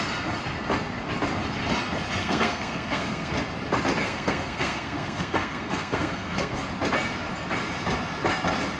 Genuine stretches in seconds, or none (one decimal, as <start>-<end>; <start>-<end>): 0.0-2.2; 3.3-4.0; 6.6-8.8